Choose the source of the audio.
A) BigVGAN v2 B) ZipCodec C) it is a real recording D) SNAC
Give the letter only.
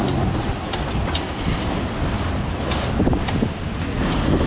C